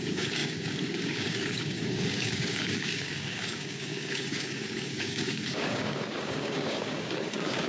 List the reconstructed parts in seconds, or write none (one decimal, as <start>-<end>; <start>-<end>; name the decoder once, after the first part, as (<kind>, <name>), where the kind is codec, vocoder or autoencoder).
0.0-7.7 (codec, DAC)